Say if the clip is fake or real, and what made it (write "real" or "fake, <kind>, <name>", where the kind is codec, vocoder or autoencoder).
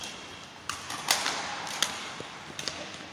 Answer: real